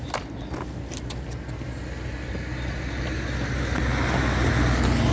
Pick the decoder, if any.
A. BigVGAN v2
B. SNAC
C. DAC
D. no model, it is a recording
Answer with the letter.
D